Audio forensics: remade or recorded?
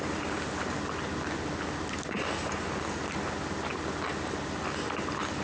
recorded